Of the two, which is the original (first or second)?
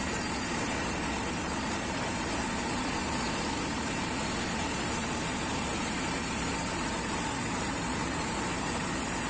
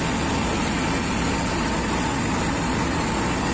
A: second